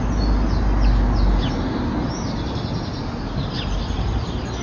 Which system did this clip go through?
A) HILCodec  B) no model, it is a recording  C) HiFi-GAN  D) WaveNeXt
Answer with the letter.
B